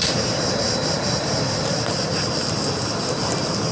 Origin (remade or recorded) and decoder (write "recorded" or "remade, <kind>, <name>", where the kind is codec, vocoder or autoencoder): remade, vocoder, BigVGAN v2